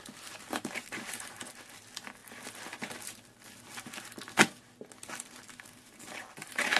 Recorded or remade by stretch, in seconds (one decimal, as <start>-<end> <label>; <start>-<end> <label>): 0.0-6.8 recorded